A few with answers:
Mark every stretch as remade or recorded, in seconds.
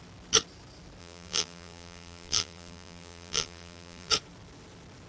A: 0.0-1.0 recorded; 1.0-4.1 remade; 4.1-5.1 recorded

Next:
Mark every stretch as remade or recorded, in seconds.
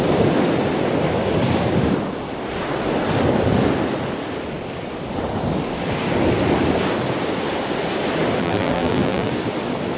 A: 0.0-8.4 recorded; 8.4-9.3 remade; 9.3-10.0 recorded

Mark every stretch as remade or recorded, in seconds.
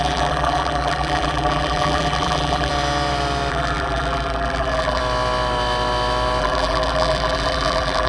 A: 0.0-2.7 remade; 2.7-3.5 recorded; 3.5-5.0 remade; 5.0-6.4 recorded; 6.4-8.1 remade